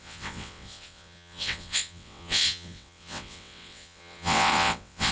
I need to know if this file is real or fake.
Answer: fake